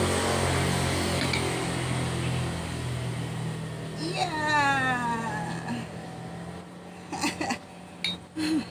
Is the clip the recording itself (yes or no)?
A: yes